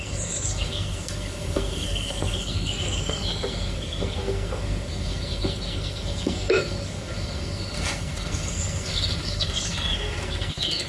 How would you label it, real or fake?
fake